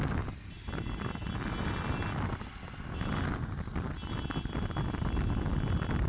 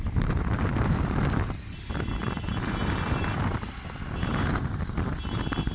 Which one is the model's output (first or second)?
second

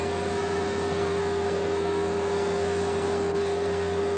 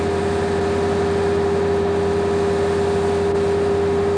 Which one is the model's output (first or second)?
first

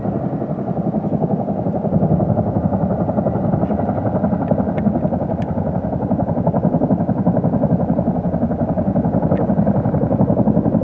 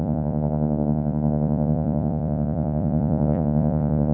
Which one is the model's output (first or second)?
second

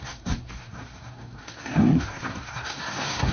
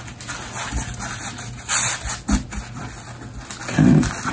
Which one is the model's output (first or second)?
first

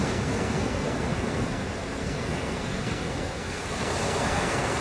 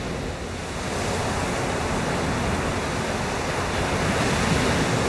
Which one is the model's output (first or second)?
first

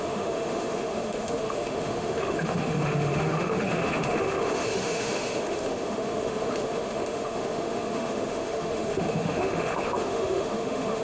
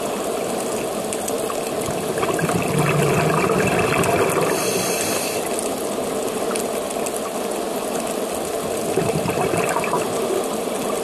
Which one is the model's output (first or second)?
first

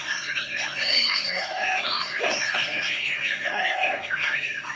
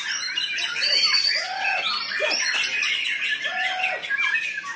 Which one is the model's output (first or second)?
first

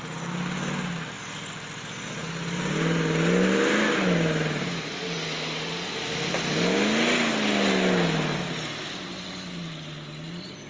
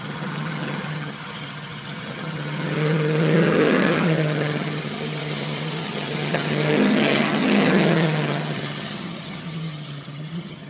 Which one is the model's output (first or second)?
second